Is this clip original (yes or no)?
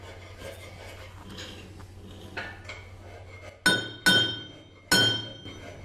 yes